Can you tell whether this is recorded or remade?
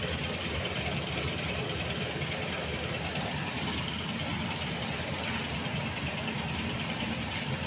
recorded